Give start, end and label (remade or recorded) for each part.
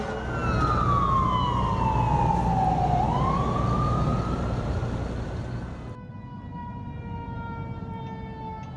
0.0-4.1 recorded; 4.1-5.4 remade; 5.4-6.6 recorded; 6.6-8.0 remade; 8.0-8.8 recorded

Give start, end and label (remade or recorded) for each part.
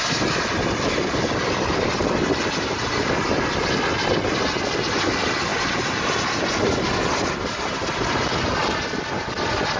0.0-9.8 recorded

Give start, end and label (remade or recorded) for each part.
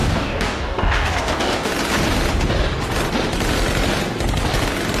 0.0-1.7 remade; 1.7-5.0 recorded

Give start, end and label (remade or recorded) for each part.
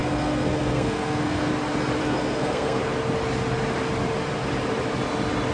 0.0-1.5 remade; 1.5-2.0 recorded; 2.0-2.8 remade; 2.8-5.5 recorded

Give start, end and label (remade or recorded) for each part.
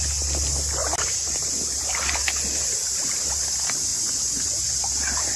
0.0-3.9 recorded; 3.9-4.7 remade; 4.7-5.4 recorded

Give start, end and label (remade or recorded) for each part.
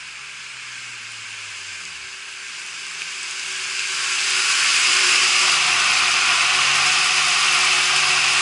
0.0-4.7 recorded; 4.7-5.3 remade; 5.3-8.4 recorded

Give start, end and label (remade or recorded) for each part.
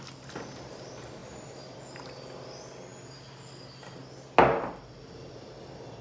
0.0-6.0 recorded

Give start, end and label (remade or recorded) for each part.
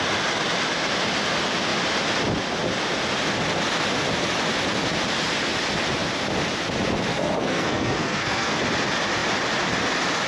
0.0-7.1 recorded; 7.1-8.6 remade; 8.6-10.3 recorded